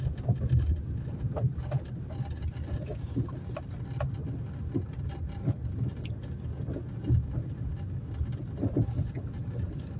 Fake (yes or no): no